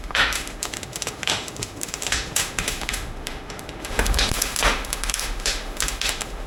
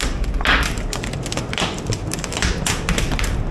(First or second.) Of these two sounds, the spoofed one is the first